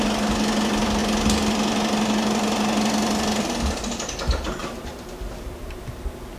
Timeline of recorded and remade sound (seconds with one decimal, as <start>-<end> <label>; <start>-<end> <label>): 0.0-6.4 recorded